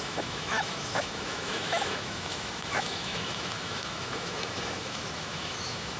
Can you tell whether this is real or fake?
fake